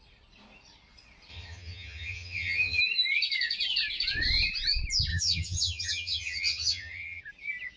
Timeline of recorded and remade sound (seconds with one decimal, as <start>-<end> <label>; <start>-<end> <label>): 0.0-1.3 recorded; 1.3-2.8 remade; 2.8-5.1 recorded; 5.1-7.2 remade; 7.2-7.8 recorded